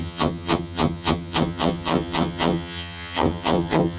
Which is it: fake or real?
fake